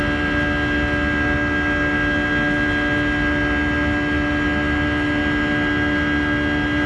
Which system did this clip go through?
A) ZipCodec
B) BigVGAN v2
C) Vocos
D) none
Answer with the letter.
D